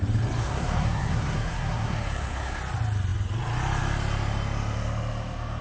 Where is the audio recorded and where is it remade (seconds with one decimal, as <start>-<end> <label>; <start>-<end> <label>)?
0.0-0.4 recorded; 0.4-2.6 remade; 2.6-5.6 recorded